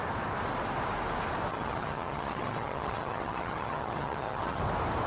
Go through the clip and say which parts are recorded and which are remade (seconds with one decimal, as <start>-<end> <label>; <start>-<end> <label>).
0.0-1.5 recorded; 1.5-4.6 remade; 4.6-5.1 recorded